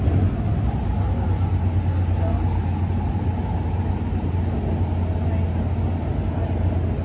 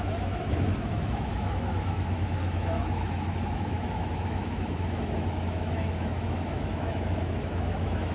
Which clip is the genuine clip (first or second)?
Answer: first